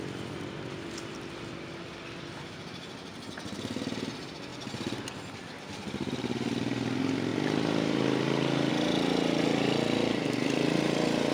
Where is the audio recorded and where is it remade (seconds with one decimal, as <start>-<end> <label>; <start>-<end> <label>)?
0.0-11.3 recorded